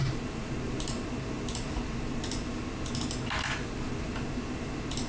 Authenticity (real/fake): real